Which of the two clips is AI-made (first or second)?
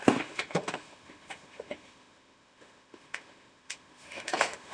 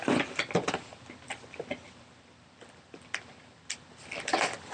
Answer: first